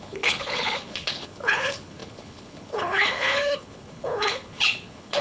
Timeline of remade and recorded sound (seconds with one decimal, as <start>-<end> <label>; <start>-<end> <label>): 0.0-5.2 remade